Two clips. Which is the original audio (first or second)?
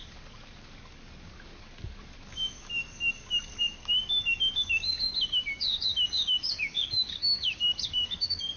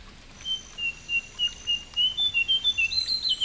second